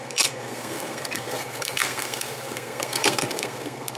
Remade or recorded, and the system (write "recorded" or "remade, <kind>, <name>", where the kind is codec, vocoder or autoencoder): remade, codec, SNAC